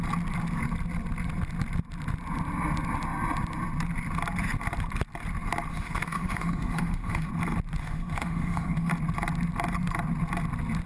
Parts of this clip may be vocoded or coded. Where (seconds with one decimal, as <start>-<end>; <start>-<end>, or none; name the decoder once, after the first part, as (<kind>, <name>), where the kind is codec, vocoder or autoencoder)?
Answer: 5.7-7.3 (autoencoder, DAC-VAE); 7.8-8.9